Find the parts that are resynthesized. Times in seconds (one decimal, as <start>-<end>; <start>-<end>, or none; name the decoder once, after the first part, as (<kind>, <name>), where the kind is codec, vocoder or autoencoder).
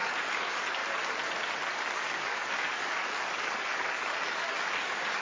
0.0-0.8 (codec, DAC); 1.8-5.2